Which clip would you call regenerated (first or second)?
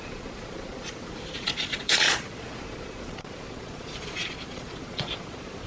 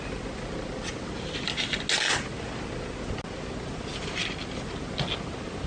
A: first